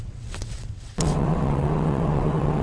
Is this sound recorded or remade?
remade